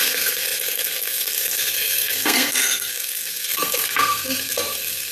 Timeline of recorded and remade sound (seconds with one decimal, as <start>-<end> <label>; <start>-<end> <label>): 0.0-5.1 remade